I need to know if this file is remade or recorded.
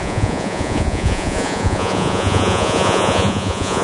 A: remade